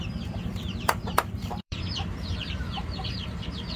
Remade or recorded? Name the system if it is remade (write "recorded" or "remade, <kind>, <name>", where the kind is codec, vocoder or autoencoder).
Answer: remade, vocoder, BigVGAN v2